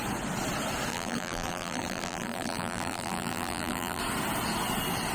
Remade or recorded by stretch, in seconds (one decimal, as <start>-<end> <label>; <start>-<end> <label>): 0.0-0.9 recorded; 0.9-4.0 remade; 4.0-5.1 recorded